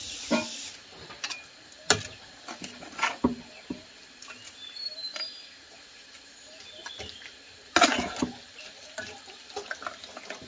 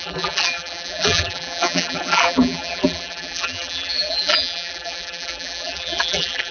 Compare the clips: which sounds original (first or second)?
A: first